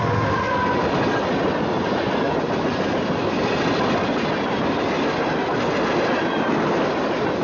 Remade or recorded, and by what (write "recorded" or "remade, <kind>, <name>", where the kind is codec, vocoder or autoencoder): recorded